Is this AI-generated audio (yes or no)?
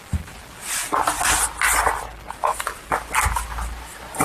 no